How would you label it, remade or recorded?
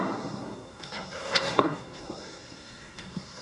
remade